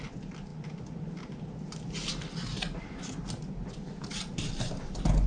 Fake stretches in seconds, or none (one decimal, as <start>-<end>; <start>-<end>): none